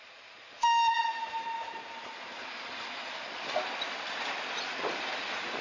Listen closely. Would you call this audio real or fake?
real